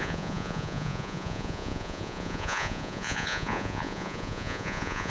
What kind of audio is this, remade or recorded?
remade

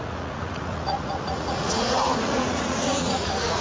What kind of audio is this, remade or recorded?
remade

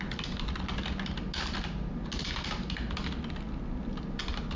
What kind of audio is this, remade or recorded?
recorded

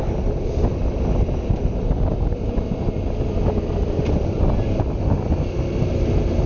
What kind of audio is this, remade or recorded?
recorded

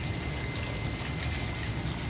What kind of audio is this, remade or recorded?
recorded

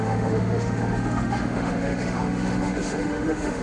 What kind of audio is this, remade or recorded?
remade